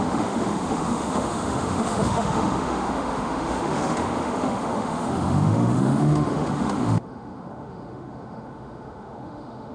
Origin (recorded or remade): remade